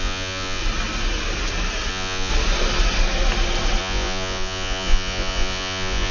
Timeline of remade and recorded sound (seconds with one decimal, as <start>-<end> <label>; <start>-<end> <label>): 0.0-0.6 remade; 0.6-1.9 recorded; 1.9-2.3 remade; 2.3-3.8 recorded; 3.8-6.1 remade